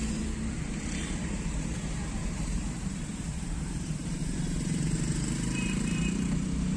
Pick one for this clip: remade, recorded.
remade